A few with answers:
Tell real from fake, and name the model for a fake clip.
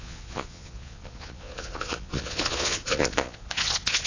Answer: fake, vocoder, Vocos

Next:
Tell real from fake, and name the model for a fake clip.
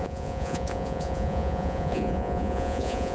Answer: fake, vocoder, Vocos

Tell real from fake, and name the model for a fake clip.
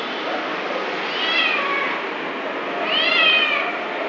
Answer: real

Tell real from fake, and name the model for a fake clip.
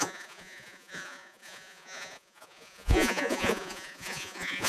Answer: fake, vocoder, Vocos